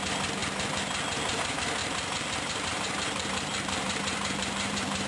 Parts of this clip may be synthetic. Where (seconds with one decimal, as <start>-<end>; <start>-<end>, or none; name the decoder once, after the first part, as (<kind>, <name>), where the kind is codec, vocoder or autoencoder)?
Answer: 1.8-5.1 (vocoder, BigVGAN v2)